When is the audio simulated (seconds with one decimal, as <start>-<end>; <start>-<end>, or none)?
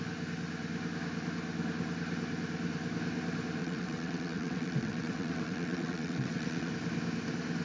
3.6-6.7